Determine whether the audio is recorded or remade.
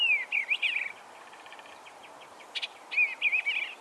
recorded